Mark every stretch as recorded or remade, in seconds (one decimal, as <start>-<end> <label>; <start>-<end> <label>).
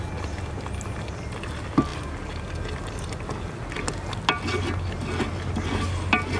0.0-6.4 recorded